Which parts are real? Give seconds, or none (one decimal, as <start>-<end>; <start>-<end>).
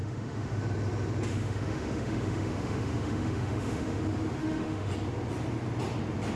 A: 0.6-1.3; 4.0-4.4; 4.9-6.4